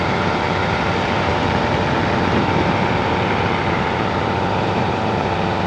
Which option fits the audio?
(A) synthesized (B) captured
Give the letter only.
A